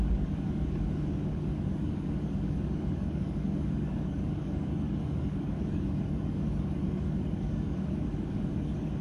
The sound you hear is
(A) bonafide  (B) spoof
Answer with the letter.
B